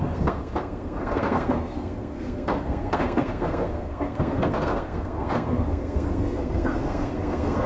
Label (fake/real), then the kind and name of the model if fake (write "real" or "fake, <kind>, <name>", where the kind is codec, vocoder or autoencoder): fake, codec, SNAC